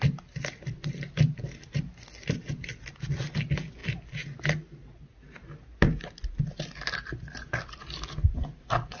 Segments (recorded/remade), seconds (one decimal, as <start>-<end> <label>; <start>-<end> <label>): 0.0-9.0 recorded